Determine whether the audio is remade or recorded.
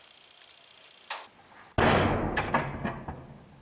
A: recorded